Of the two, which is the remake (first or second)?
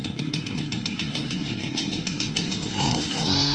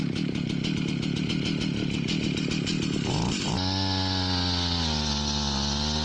first